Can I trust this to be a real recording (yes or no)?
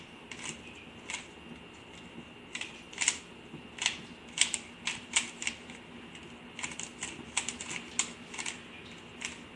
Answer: yes